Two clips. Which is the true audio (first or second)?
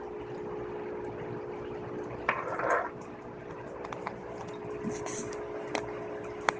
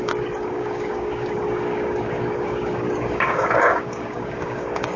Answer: first